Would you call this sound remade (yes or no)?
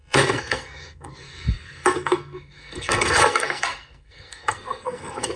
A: yes